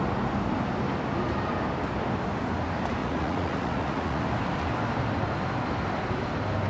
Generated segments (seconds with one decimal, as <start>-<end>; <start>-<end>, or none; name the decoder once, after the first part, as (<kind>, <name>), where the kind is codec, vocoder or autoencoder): 3.0-4.2 (vocoder, Vocos)